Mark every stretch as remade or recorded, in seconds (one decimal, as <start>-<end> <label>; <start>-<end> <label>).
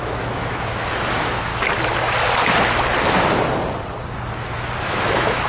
0.0-1.5 remade; 1.5-4.8 recorded; 4.8-5.5 remade